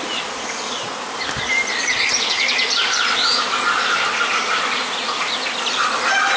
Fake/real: real